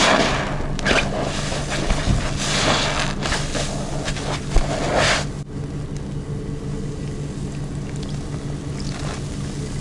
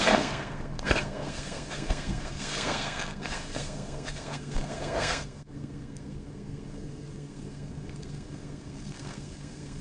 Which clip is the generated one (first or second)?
second